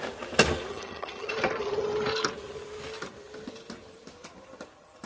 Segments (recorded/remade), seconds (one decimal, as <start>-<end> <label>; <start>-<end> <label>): 0.0-0.7 recorded; 0.7-1.3 remade; 1.3-5.1 recorded